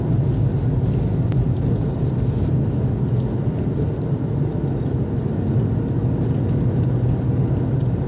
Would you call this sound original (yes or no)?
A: yes